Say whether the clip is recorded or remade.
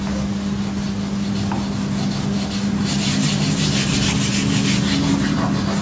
recorded